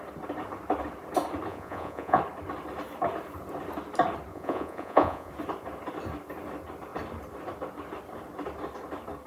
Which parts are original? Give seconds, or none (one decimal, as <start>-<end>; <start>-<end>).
0.0-1.5; 2.2-4.3; 5.3-9.3